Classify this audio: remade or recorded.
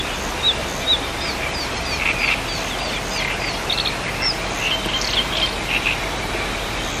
recorded